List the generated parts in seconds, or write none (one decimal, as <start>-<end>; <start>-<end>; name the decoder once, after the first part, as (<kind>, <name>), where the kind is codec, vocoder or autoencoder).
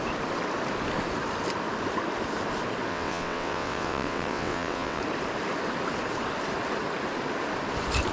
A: 2.9-5.0 (vocoder, WaveNeXt)